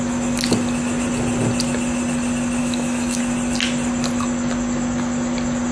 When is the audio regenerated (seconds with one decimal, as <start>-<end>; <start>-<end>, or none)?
2.6-3.2